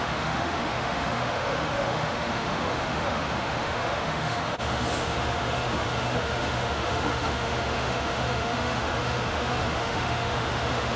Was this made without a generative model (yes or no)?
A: no